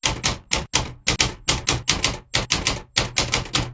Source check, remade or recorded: recorded